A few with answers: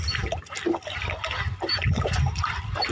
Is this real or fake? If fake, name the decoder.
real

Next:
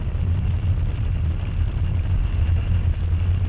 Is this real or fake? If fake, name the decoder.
real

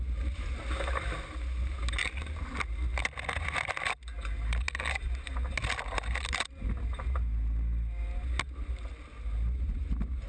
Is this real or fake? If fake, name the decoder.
real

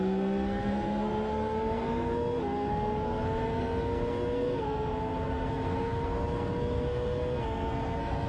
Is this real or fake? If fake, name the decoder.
fake, codec, SNAC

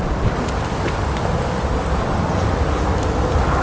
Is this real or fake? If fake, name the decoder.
real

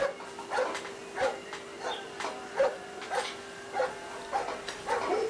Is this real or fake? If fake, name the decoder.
real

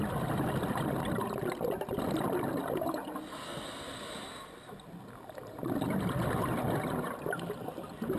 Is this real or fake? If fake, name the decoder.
real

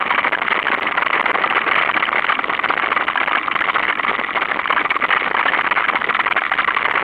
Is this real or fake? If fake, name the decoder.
real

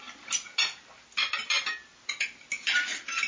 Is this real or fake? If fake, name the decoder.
real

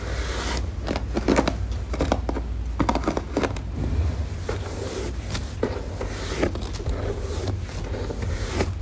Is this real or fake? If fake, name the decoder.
real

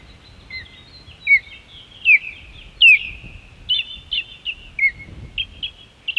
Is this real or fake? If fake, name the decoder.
real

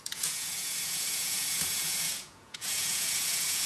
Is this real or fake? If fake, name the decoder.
fake, vocoder, Vocos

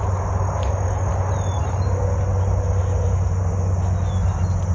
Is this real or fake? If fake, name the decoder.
real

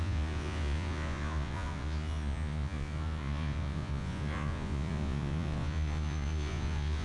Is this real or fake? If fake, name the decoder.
fake, vocoder, Vocos